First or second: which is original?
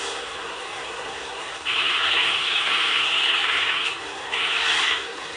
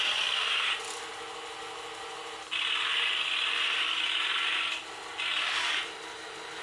second